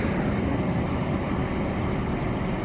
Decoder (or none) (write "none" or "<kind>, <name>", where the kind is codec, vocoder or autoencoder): none